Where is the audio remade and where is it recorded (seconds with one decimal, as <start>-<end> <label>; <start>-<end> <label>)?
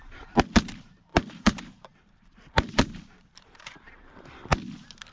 0.0-1.1 recorded; 1.1-4.2 remade; 4.2-5.1 recorded